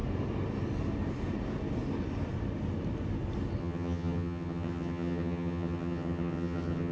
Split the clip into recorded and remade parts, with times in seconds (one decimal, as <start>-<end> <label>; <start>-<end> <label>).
0.0-3.6 recorded; 3.6-6.9 remade